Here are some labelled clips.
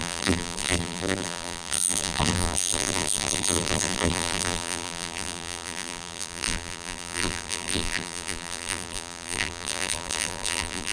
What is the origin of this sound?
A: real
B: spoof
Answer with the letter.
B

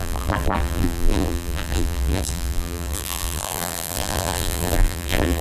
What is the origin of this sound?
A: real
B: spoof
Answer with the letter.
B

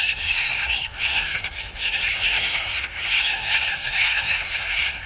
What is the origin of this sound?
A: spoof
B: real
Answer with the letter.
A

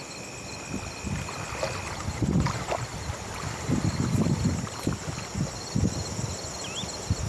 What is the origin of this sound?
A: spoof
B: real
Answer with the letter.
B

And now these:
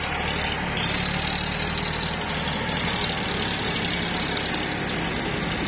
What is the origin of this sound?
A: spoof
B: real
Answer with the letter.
B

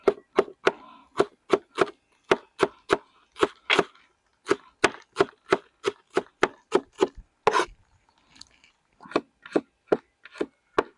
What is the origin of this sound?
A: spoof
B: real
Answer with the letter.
B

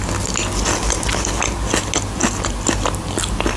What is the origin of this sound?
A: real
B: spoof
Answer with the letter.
A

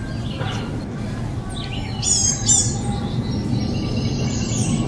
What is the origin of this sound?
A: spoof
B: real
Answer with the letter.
B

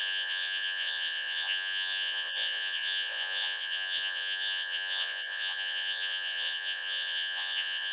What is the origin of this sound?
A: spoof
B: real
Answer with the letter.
A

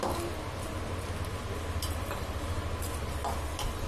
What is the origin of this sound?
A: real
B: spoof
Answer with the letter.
A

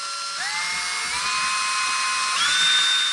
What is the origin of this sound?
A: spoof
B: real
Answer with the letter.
B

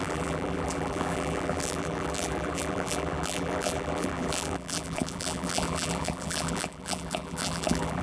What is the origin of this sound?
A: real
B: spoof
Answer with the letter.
B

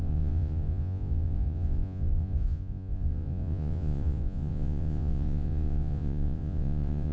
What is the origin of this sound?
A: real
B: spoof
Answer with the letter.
B